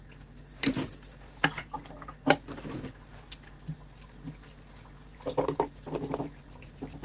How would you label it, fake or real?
real